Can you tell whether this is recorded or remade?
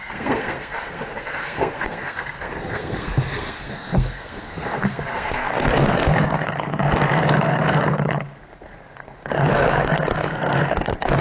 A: remade